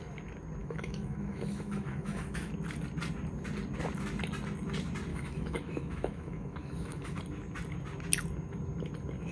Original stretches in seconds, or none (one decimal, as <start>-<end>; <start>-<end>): 0.0-0.6; 2.5-5.1; 7.2-9.3